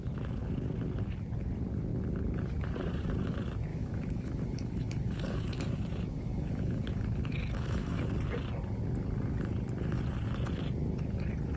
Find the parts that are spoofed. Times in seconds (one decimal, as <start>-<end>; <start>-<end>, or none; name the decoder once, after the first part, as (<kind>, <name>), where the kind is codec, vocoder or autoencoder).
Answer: 3.7-8.1 (autoencoder, DAC-VAE)